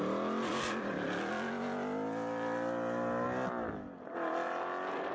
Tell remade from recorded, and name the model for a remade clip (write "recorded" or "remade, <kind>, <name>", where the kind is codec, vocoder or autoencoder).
recorded